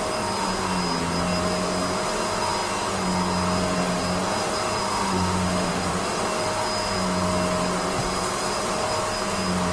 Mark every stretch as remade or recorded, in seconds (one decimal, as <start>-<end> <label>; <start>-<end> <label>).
0.0-4.9 recorded; 4.9-5.9 remade; 5.9-9.7 recorded